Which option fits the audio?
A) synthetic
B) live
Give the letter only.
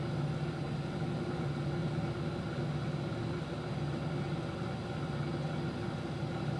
B